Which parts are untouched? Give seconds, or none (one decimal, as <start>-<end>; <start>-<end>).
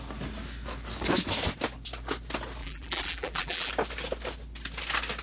0.0-2.6; 3.7-5.2